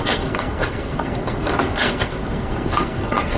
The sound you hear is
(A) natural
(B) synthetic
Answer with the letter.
B